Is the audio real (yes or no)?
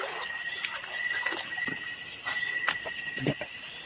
yes